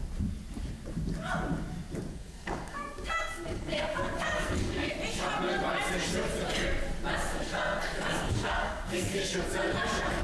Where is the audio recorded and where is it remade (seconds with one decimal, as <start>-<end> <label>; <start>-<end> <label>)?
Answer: 0.0-2.1 recorded; 2.1-4.9 remade; 4.9-7.3 recorded; 7.3-9.4 remade; 9.4-10.2 recorded